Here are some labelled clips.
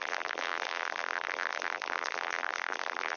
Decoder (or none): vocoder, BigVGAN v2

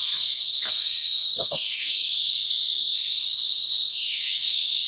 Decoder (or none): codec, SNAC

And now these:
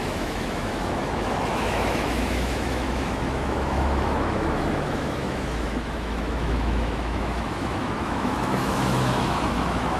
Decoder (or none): autoencoder, DAC-VAE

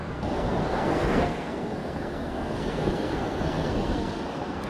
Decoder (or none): codec, SNAC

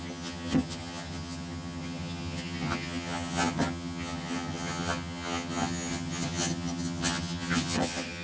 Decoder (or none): vocoder, HiFi-GAN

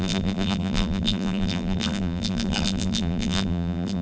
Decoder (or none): vocoder, BigVGAN v2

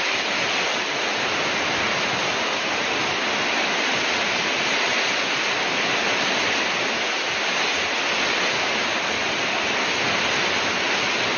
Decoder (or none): none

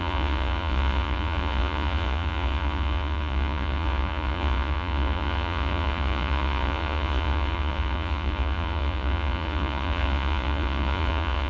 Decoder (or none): vocoder, Vocos